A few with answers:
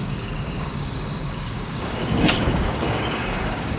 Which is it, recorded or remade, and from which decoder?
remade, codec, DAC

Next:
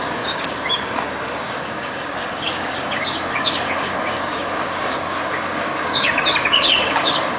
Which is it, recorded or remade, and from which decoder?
remade, codec, DAC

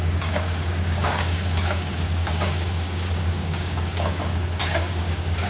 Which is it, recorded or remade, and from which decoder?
remade, codec, DAC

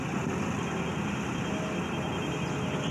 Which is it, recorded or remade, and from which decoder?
recorded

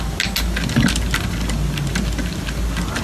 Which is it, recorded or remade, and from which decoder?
recorded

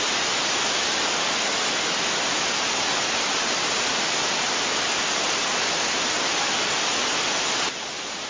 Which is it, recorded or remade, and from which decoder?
recorded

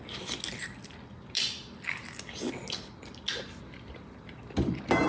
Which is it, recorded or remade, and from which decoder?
recorded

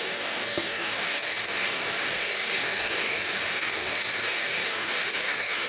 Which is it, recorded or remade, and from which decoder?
remade, codec, DAC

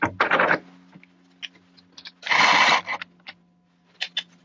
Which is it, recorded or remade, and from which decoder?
recorded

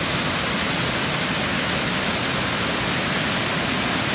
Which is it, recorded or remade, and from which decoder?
recorded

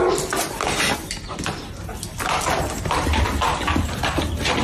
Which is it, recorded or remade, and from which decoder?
recorded